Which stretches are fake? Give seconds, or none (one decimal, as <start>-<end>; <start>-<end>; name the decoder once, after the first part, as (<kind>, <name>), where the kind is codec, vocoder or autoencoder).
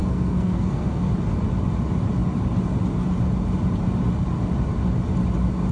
0.0-1.1 (codec, SNAC)